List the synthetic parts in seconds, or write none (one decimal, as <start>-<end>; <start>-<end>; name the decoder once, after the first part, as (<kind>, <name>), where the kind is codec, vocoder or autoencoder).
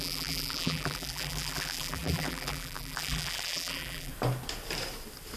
0.0-4.1 (vocoder, BigVGAN v2)